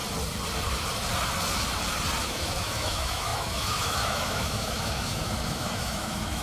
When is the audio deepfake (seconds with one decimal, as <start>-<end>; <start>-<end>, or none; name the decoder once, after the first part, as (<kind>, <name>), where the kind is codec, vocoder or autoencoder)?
2.2-6.4 (autoencoder, DAC-VAE)